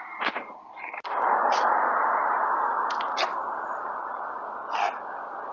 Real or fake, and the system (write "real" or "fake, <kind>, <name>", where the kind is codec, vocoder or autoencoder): real